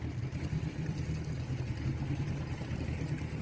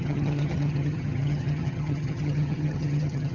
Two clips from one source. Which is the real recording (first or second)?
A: first